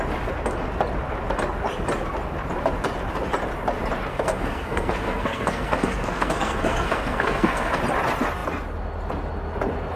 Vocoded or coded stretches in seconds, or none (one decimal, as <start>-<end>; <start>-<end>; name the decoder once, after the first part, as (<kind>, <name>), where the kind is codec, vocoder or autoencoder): 4.1-7.8 (codec, SNAC)